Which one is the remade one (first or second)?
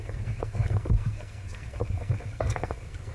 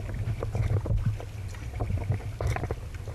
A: first